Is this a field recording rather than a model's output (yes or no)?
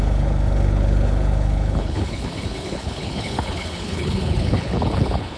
no